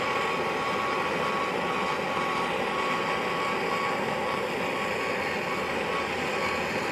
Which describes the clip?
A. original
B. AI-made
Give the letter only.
A